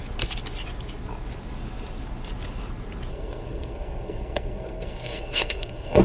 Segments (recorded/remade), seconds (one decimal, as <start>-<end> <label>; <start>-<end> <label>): 0.0-3.1 recorded; 3.1-6.0 remade